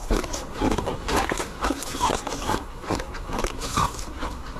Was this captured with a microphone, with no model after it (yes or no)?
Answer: no